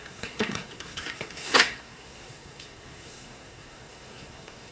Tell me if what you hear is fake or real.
fake